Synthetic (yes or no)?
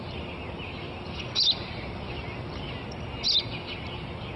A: no